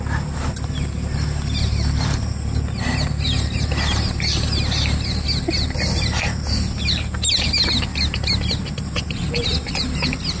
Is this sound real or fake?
real